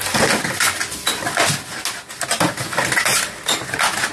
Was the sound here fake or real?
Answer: real